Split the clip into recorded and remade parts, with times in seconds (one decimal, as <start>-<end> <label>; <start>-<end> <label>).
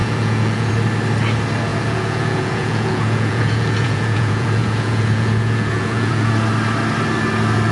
0.0-0.7 remade; 0.7-1.7 recorded; 1.7-6.3 remade; 6.3-7.7 recorded